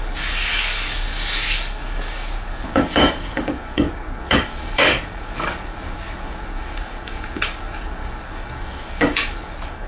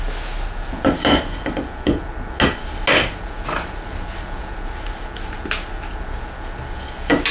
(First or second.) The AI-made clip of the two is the first